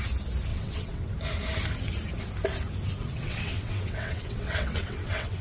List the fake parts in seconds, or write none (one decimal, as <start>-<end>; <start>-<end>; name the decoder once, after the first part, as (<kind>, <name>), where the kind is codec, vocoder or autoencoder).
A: 0.5-1.1 (vocoder, WaveNeXt); 3.0-5.4